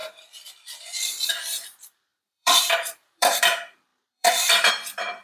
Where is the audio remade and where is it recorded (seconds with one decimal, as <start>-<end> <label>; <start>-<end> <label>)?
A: 0.0-1.3 recorded; 1.3-5.2 remade